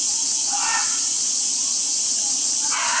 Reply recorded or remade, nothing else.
recorded